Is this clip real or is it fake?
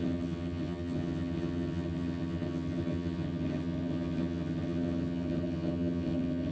fake